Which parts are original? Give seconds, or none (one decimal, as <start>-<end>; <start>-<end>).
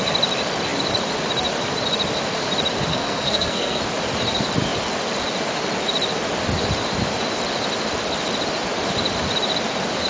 0.0-2.9; 3.8-10.1